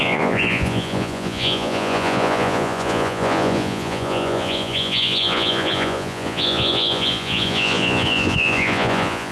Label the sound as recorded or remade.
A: remade